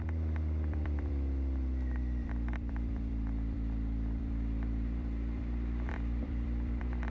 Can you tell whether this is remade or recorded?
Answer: remade